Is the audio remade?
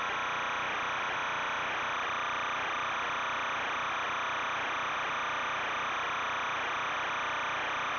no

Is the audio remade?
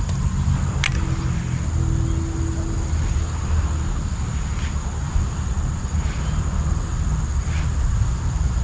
no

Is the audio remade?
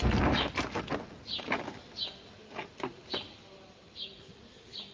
no